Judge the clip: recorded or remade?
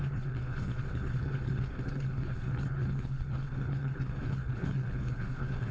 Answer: remade